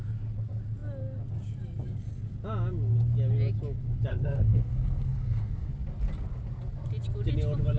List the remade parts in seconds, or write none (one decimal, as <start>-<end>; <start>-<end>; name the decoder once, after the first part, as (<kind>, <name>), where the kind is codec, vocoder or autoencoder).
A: 4.1-5.7 (codec, SNAC)